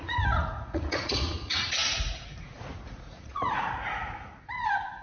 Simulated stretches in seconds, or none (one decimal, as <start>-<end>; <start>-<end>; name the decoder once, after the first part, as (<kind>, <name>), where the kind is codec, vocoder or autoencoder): 0.0-5.0 (vocoder, Vocos)